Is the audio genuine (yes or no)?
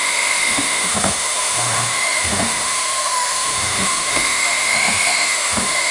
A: no